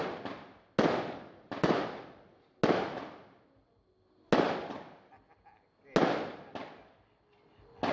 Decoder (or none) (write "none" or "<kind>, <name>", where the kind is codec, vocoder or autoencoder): none